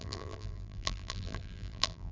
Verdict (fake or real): fake